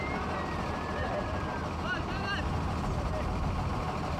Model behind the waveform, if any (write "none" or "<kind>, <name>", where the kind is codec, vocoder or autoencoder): none